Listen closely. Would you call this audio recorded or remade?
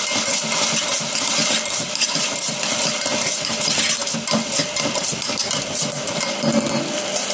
recorded